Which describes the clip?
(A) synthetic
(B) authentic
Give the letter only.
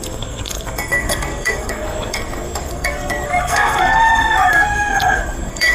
A